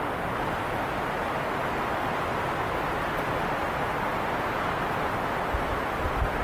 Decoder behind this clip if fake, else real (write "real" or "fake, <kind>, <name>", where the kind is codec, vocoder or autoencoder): real